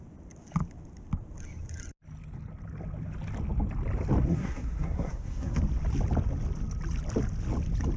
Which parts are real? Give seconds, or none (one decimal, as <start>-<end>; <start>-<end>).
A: 0.0-4.3; 5.6-8.0